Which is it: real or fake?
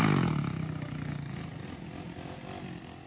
real